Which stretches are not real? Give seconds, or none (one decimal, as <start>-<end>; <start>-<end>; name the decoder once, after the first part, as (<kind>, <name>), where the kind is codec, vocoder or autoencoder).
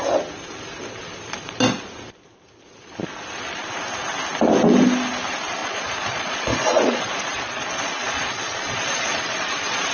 5.6-9.9 (vocoder, Vocos)